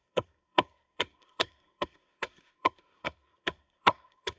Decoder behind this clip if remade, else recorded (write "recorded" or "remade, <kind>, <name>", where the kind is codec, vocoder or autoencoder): remade, codec, SNAC